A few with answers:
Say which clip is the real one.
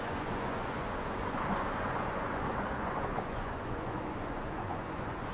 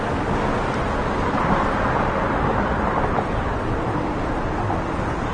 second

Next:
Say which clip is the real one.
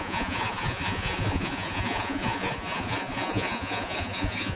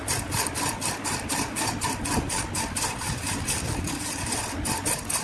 second